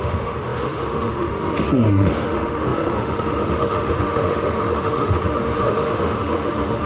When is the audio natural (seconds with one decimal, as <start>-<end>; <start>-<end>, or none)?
none